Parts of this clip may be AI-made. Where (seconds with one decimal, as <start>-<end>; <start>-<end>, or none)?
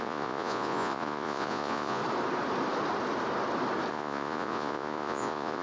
0.0-2.0; 3.9-5.6